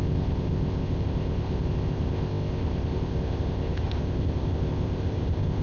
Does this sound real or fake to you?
fake